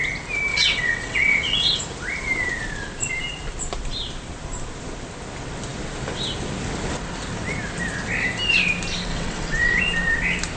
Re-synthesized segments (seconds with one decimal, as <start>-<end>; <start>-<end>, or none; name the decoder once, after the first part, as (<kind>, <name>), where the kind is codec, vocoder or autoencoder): 0.5-1.8 (vocoder, WaveNeXt); 9.1-9.8